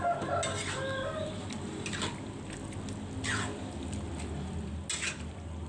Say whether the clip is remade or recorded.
recorded